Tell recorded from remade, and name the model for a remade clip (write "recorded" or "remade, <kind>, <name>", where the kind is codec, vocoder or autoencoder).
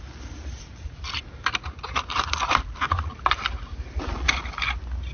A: recorded